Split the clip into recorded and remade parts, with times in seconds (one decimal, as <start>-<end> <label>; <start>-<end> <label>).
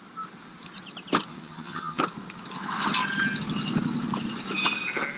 0.0-1.3 recorded; 1.3-2.0 remade; 2.0-5.2 recorded